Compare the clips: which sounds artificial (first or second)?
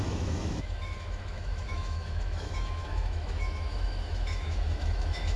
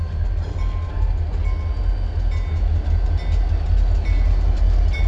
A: first